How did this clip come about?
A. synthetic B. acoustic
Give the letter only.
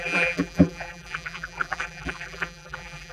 A